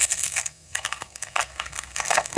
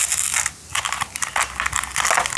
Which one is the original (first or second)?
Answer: second